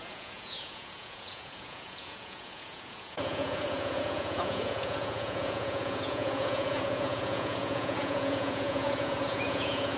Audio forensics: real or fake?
fake